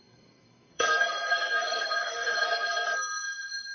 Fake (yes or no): yes